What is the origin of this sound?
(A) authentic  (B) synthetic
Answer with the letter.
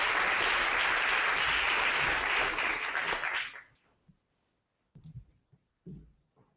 A